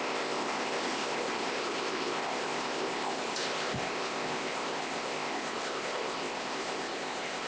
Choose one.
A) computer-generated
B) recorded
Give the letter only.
A